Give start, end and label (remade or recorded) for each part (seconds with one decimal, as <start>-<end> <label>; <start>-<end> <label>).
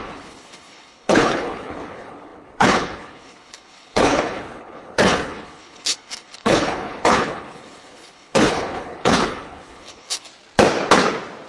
0.0-10.3 remade; 10.3-11.5 recorded